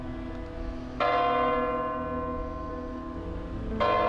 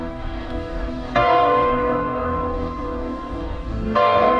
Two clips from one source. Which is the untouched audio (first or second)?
first